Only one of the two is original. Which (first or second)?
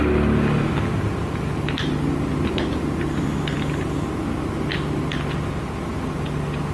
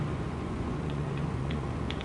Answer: first